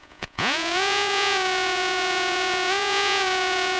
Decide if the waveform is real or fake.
fake